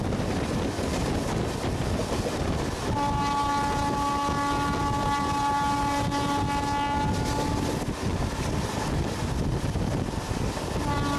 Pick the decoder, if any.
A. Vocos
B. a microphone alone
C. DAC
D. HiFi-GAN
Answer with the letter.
B